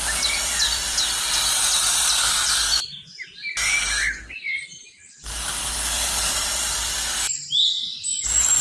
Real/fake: real